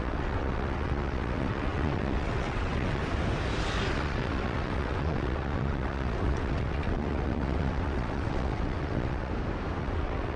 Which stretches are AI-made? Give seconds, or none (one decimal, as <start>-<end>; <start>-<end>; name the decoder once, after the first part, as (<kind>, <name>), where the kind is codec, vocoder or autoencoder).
0.0-3.0 (vocoder, WaveNeXt); 3.9-9.3; 9.8-10.4